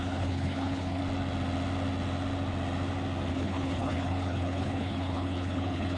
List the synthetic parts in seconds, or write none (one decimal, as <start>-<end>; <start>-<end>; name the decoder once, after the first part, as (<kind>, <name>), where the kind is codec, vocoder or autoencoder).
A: 0.0-1.0 (codec, HILCodec); 3.3-6.0